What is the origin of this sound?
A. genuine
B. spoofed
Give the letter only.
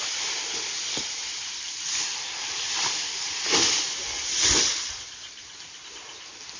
A